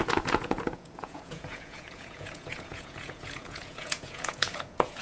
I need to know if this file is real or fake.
fake